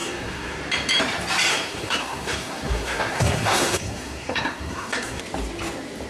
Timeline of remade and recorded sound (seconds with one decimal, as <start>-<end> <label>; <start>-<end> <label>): 0.0-0.6 remade; 0.6-1.5 recorded; 1.5-5.2 remade; 5.2-6.1 recorded